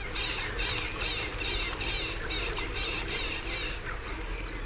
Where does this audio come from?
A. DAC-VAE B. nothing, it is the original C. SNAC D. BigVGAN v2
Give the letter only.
B